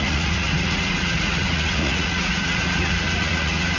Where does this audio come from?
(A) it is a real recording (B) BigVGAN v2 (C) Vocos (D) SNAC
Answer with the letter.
C